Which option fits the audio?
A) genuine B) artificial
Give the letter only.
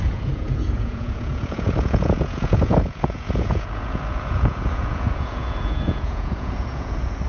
B